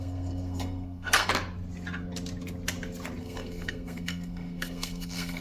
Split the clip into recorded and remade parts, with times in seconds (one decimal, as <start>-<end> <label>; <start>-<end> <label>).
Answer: 0.0-1.3 remade; 1.3-3.2 recorded; 3.2-5.4 remade